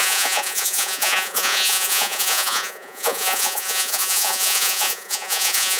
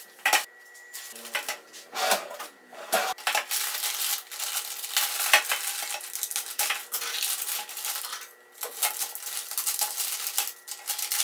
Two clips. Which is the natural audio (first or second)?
second